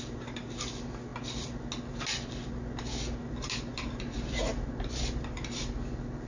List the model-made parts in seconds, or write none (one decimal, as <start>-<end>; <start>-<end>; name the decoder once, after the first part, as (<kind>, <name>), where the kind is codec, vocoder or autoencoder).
none